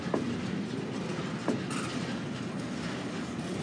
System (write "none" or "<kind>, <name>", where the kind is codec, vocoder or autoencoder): none